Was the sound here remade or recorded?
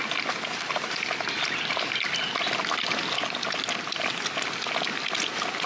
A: recorded